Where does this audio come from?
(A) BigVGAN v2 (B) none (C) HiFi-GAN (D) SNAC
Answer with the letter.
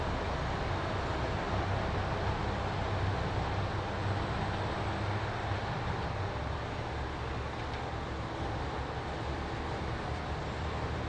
B